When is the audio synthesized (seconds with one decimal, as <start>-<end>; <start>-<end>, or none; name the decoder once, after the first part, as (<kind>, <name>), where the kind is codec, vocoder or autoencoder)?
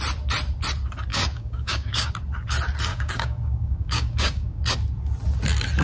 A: 1.1-2.1 (codec, DAC); 2.9-4.6